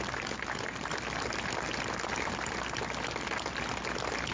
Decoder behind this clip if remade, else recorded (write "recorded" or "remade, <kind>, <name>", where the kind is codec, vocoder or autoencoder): recorded